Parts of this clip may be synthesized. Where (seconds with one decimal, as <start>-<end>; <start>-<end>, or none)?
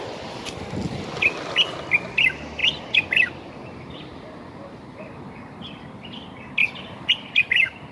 6.6-7.1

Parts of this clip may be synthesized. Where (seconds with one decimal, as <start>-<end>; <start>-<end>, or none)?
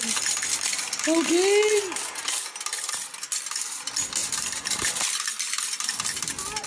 4.2-5.3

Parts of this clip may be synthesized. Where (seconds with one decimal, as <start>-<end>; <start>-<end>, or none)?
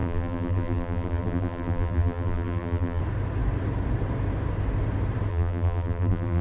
0.0-3.0; 5.3-6.4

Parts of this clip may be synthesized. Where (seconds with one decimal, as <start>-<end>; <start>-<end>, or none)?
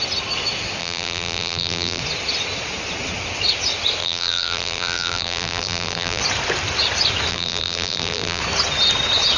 0.8-2.0; 4.0-6.2; 7.3-8.4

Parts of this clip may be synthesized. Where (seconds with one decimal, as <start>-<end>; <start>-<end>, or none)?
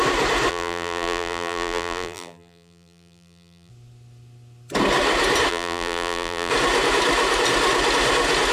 0.5-3.7; 5.5-6.5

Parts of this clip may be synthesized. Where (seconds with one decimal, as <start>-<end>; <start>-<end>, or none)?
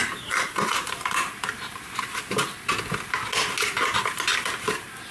0.0-2.5; 4.3-5.1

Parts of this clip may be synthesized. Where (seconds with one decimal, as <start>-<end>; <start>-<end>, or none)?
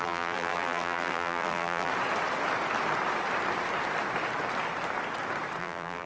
0.0-1.9; 5.6-6.1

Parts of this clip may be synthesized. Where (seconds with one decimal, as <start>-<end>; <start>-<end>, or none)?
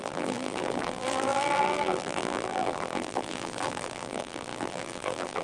0.0-5.4